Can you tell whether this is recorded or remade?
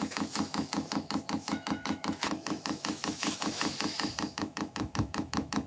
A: remade